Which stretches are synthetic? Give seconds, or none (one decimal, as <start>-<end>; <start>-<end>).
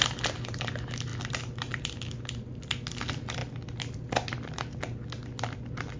none